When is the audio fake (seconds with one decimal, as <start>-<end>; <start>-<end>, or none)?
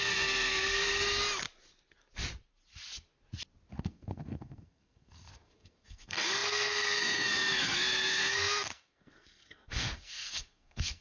0.0-0.9; 3.7-11.0